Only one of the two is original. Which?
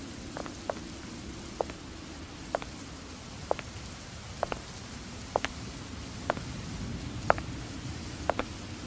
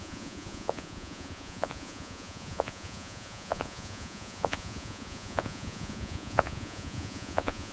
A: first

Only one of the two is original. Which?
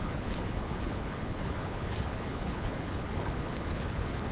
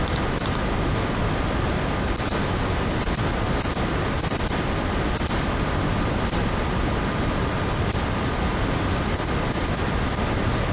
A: second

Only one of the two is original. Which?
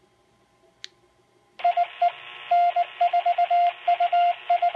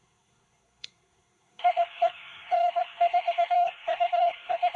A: first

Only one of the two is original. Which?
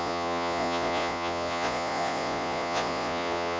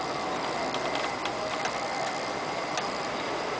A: second